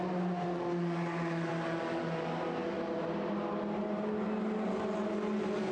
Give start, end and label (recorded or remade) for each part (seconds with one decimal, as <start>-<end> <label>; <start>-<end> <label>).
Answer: 0.0-5.7 recorded